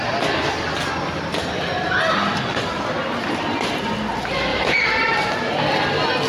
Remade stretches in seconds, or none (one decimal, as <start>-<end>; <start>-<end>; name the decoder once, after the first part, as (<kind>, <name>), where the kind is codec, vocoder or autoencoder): 4.5-5.3 (vocoder, BigVGAN v2)